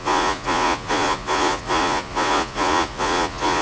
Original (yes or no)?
no